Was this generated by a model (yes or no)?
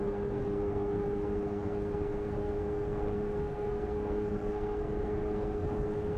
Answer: yes